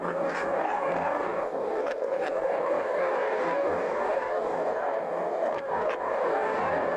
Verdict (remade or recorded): remade